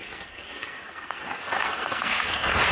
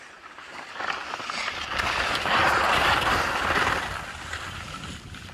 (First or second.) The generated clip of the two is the first